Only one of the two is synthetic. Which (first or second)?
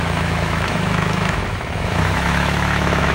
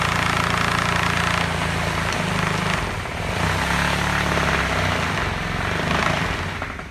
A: first